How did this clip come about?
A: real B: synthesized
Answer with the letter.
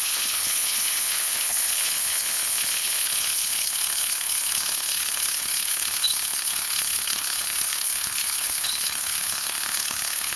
B